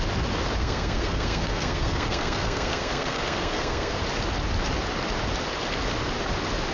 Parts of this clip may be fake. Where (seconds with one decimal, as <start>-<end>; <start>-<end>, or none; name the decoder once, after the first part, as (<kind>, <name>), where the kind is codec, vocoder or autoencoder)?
0.6-4.0 (codec, SNAC)